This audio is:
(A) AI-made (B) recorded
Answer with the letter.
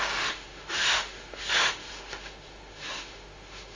A